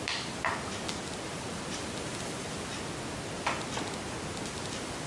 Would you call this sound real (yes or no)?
yes